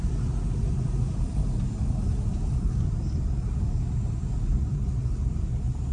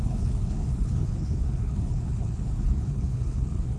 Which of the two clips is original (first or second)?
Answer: first